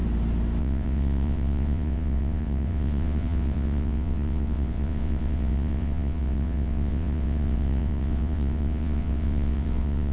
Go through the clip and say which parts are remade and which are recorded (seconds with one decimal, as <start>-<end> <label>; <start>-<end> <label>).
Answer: 0.0-0.6 recorded; 0.6-10.1 remade